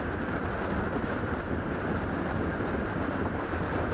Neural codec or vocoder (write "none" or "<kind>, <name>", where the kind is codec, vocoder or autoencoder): vocoder, BigVGAN v2